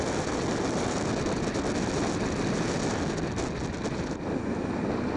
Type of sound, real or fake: real